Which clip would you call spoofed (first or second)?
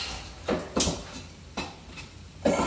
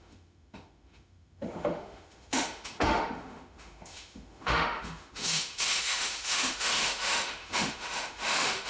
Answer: second